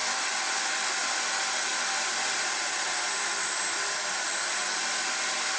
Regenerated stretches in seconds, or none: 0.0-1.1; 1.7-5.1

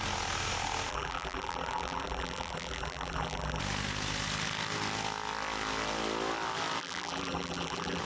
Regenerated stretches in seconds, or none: 0.9-3.6; 6.8-8.0

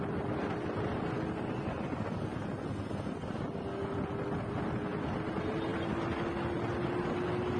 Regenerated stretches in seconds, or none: none

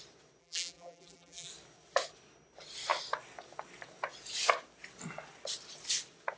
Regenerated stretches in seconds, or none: 0.4-1.5

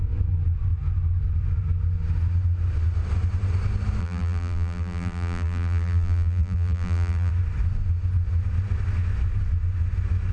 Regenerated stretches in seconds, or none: 4.0-7.3

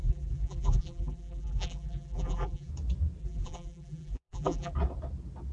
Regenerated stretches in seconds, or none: 0.0-2.7; 3.2-4.7

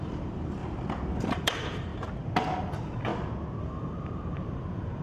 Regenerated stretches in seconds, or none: 0.0-0.6; 1.2-1.9; 2.6-3.1; 3.6-5.0

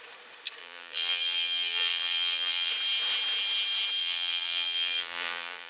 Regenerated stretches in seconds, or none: 0.6-2.7; 4.0-5.7